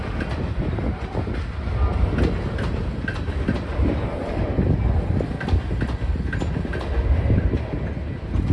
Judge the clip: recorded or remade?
recorded